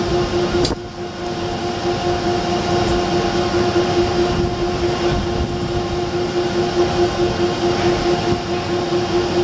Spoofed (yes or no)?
no